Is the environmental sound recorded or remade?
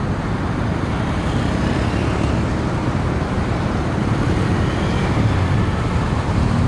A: remade